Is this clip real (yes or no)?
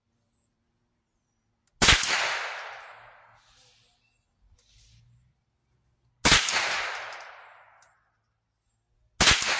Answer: yes